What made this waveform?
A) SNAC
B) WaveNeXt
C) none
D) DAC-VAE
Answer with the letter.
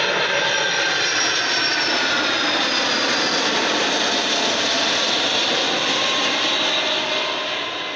C